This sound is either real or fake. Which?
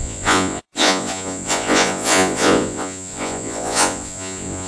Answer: fake